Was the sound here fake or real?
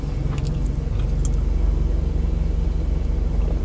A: real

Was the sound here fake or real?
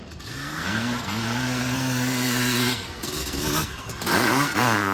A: fake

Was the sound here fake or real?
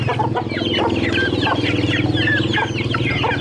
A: real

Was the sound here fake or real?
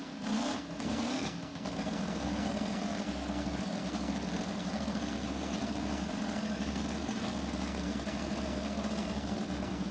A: fake